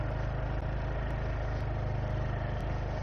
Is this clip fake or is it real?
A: real